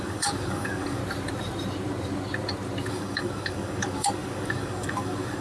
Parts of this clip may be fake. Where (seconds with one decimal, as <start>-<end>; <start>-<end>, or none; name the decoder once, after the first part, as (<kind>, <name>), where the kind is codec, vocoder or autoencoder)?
0.0-1.0 (codec, DAC); 2.9-5.4